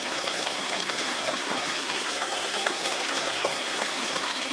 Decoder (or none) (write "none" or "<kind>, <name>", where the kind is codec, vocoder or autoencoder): codec, SNAC